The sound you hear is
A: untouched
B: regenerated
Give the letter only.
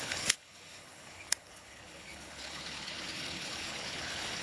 B